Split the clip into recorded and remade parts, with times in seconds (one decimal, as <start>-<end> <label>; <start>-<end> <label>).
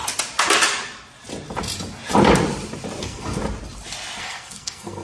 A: 0.0-3.0 recorded; 3.0-3.4 remade; 3.4-4.2 recorded; 4.2-5.0 remade